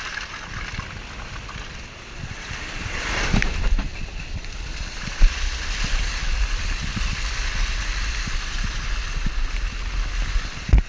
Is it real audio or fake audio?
real